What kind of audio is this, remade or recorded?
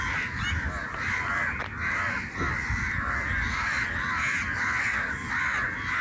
recorded